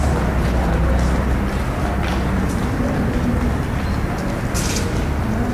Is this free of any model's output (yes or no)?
yes